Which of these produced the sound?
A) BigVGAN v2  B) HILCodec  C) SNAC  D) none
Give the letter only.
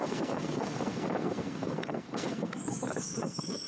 C